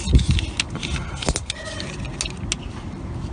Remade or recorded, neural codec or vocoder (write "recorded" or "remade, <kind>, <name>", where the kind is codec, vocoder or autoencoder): recorded